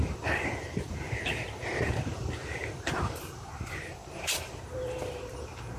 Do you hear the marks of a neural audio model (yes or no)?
yes